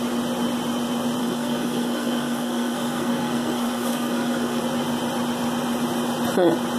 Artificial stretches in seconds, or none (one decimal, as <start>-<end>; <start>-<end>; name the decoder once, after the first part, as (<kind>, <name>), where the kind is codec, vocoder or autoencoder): 1.2-4.6 (codec, SNAC)